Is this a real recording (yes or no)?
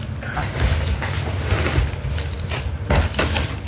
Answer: yes